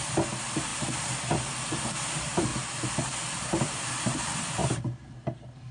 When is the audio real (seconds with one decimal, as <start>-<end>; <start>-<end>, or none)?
2.5-3.4

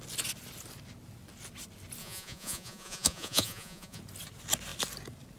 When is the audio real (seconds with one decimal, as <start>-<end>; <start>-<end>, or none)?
0.0-2.0; 4.0-5.4

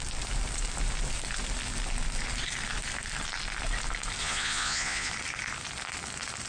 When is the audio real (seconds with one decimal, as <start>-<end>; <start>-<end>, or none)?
0.0-4.2; 5.1-6.5

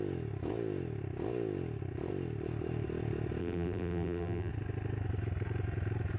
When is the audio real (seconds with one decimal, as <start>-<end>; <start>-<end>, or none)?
0.0-3.4; 4.5-6.2